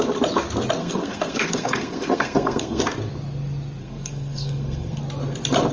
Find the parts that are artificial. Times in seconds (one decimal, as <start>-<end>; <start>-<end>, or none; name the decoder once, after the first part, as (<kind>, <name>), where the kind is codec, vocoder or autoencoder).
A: 0.8-2.8 (codec, SNAC); 3.8-5.0